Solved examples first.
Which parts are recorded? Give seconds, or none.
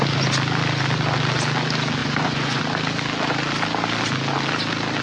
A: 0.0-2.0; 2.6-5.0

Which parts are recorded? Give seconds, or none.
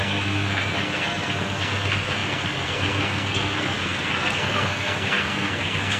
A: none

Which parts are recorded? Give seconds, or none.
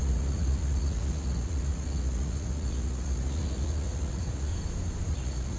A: 4.5-5.1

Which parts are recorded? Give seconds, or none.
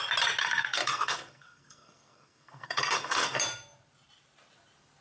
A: 0.0-0.4; 3.4-5.0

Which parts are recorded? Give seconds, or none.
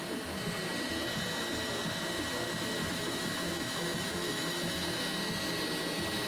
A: 0.0-2.8; 5.0-6.3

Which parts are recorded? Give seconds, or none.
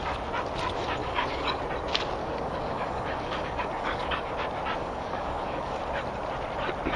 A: 0.0-1.0; 1.6-2.2; 4.3-4.8; 5.8-7.0